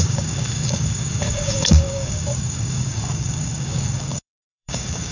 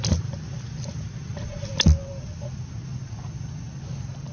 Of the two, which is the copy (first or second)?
first